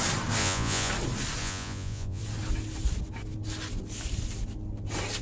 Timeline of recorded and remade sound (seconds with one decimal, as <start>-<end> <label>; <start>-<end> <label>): 0.0-0.4 recorded; 0.4-0.9 remade; 0.9-1.4 recorded; 1.4-2.2 remade; 2.2-5.2 recorded